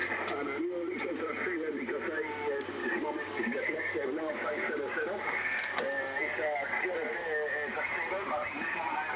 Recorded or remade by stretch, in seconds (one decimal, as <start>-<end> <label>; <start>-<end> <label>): 0.0-2.8 recorded; 2.8-5.8 remade; 5.8-9.2 recorded